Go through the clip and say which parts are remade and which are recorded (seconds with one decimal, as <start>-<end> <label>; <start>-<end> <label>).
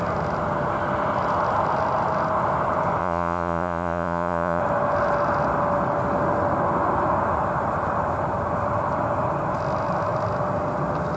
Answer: 0.0-3.0 recorded; 3.0-4.6 remade; 4.6-11.2 recorded